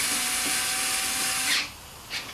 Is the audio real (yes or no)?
yes